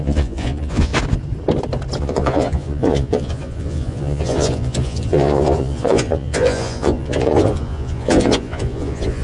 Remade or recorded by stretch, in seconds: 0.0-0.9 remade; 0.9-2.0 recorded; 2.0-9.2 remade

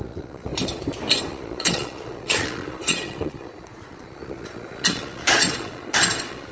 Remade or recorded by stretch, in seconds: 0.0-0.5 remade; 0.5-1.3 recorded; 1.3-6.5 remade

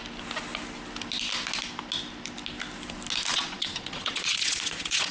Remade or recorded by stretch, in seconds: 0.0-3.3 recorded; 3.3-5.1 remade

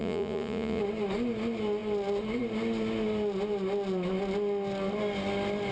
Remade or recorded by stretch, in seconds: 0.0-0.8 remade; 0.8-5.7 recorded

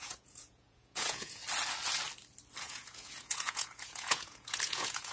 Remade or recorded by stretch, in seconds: 0.0-1.4 remade; 1.4-2.6 recorded; 2.6-5.1 remade

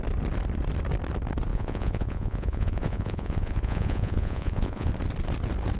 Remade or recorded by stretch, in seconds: 0.0-1.5 recorded; 1.5-4.9 remade; 4.9-5.8 recorded

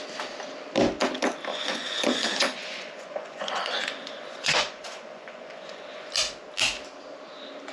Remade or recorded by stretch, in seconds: 0.0-1.5 recorded; 1.5-6.1 remade; 6.1-7.7 recorded